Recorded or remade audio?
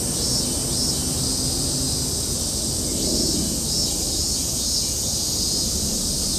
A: recorded